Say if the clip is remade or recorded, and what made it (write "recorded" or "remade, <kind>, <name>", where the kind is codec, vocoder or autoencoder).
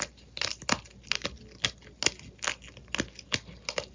recorded